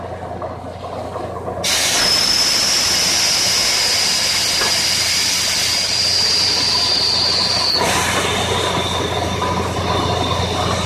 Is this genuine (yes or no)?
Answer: yes